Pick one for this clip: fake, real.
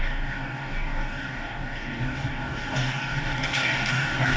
fake